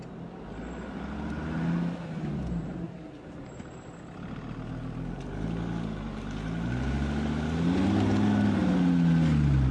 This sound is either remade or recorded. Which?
recorded